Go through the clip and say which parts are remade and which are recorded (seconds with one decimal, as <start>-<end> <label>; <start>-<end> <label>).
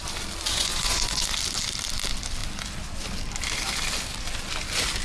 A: 0.0-0.5 recorded; 0.5-1.3 remade; 1.3-5.0 recorded